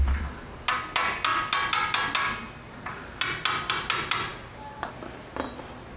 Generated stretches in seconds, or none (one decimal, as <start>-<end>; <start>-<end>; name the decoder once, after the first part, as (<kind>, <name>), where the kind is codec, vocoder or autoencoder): none